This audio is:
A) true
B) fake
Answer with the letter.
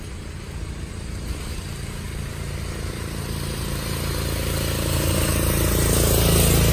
A